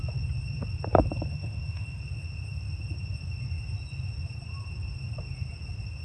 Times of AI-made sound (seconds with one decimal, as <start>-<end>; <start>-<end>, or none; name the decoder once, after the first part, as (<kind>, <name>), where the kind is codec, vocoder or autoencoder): 1.3-2.0 (autoencoder, DAC-VAE)